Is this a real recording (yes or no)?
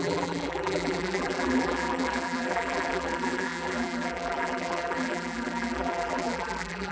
no